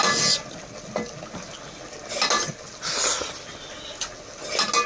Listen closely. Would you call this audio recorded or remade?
recorded